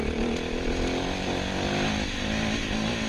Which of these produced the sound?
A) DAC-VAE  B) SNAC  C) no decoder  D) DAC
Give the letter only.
C